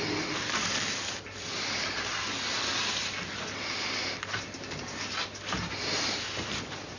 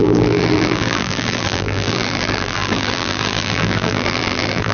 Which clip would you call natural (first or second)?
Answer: first